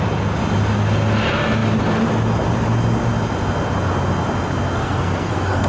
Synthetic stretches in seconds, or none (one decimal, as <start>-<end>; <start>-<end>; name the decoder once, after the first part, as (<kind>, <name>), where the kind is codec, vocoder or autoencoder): 4.8-5.7 (codec, SNAC)